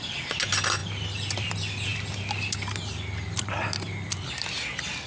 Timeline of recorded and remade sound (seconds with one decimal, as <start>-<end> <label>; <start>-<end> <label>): 0.0-5.1 recorded